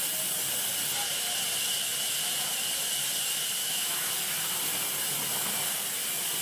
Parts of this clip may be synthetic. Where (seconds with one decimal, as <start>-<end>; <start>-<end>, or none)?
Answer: 3.6-4.1